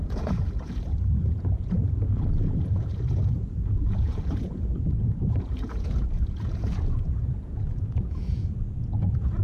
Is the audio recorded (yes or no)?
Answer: no